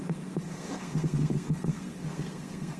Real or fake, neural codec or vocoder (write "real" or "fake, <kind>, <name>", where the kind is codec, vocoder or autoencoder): fake, codec, SNAC